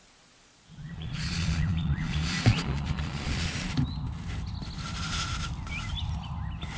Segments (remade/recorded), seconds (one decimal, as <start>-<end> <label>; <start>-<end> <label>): 0.0-3.7 remade; 3.7-6.8 recorded